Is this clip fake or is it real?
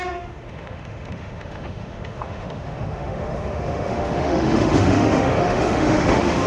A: fake